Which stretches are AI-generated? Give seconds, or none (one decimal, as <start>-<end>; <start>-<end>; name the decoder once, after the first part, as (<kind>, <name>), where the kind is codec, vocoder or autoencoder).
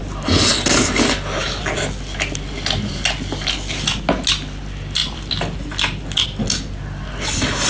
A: none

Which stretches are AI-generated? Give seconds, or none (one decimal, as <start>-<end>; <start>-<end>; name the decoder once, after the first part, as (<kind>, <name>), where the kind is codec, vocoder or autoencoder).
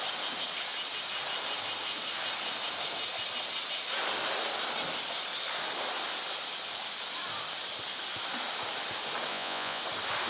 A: 9.3-9.8 (vocoder, Vocos)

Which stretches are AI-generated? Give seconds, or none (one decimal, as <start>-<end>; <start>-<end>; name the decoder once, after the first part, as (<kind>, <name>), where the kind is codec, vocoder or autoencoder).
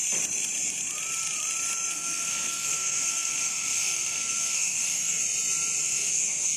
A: 1.9-5.2 (codec, SNAC); 5.8-6.6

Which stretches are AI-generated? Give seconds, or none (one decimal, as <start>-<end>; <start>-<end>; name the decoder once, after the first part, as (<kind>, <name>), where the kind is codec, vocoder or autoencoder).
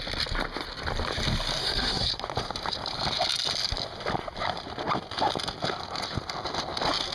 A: 1.6-2.1 (codec, SNAC)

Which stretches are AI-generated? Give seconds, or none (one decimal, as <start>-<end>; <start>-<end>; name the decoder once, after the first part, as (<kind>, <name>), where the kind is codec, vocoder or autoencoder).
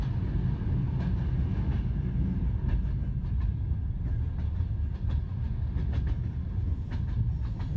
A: none